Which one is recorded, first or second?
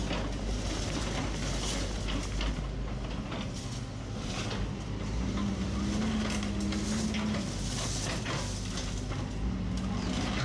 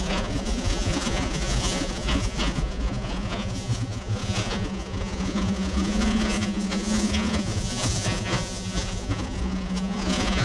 first